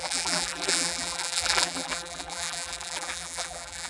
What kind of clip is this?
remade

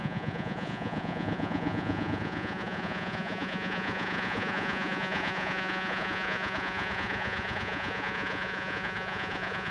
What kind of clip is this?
remade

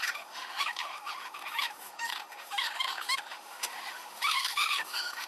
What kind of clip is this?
remade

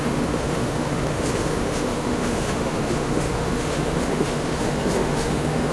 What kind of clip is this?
remade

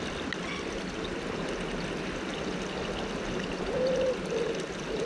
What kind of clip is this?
recorded